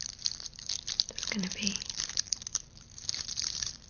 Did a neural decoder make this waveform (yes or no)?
yes